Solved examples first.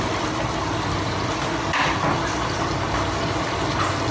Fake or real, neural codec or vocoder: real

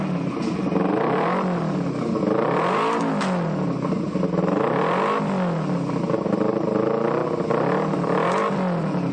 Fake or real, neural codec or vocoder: real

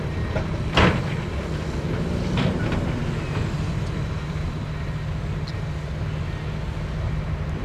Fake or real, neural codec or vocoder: real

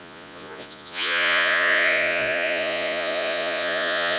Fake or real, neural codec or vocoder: fake, vocoder, Vocos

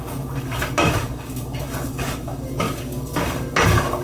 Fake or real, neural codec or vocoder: fake, codec, DAC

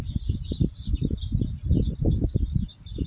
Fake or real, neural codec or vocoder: real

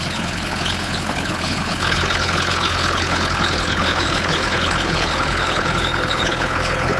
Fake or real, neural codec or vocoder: fake, codec, HILCodec